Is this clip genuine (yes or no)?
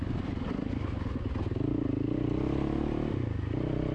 yes